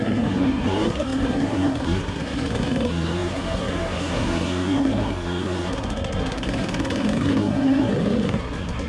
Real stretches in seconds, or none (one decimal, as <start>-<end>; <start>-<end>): none